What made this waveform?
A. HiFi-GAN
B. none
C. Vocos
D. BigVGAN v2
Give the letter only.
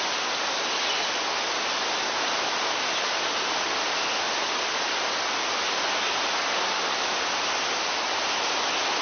B